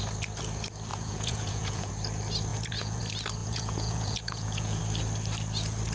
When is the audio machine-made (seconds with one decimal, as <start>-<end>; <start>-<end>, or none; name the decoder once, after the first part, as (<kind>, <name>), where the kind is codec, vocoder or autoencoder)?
0.9-1.9 (vocoder, Vocos); 2.5-3.0; 3.4-4.8